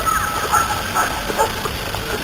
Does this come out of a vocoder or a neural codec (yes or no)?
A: no